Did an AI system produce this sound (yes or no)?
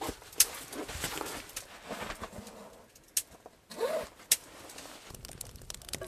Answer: no